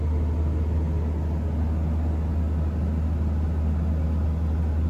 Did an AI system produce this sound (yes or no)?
no